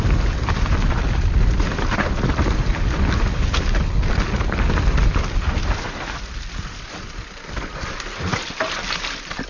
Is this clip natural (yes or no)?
yes